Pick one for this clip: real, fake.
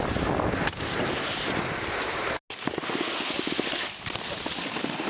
real